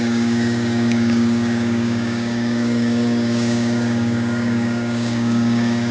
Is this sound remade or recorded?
remade